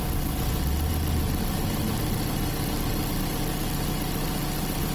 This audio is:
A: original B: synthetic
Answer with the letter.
A